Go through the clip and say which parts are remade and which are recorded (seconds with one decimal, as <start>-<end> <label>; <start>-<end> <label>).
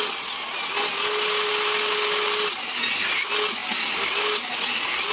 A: 0.0-5.1 recorded